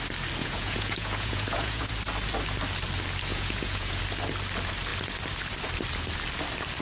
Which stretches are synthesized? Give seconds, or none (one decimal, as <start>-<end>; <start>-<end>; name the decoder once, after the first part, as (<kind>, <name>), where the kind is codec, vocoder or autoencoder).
0.4-1.9 (vocoder, Vocos); 3.3-4.0